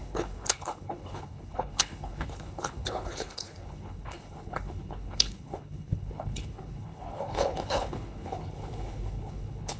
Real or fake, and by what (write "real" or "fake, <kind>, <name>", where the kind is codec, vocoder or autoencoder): fake, codec, HILCodec